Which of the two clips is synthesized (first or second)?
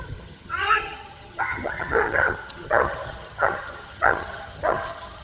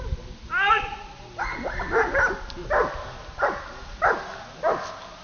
first